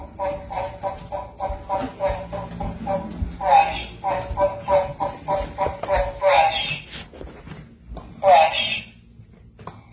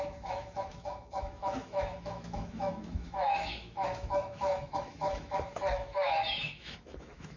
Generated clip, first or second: second